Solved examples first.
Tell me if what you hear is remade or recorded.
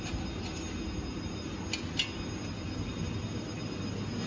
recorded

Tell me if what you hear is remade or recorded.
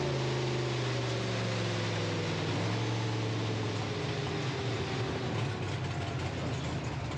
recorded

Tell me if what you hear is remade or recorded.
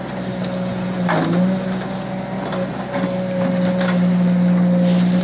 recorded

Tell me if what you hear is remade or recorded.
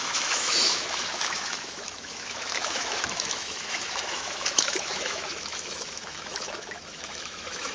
remade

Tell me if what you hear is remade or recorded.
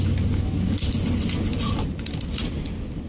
recorded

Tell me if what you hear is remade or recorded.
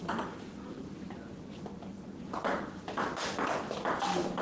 recorded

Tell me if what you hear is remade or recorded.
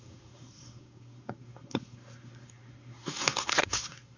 remade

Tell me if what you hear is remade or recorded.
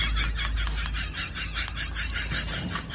recorded